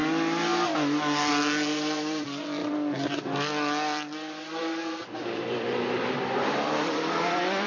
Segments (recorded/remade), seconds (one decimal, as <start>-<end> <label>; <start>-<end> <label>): 0.0-1.3 recorded; 1.3-7.7 remade